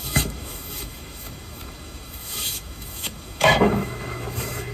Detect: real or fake fake